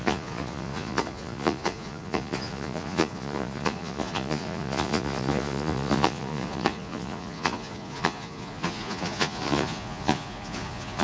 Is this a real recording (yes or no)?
no